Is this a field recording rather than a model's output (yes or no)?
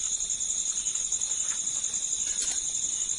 yes